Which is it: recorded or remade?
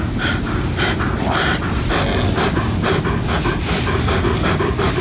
recorded